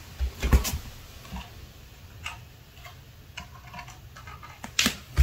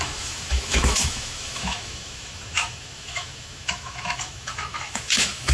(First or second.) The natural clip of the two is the first